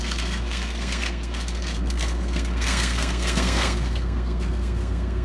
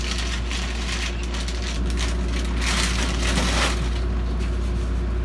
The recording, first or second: second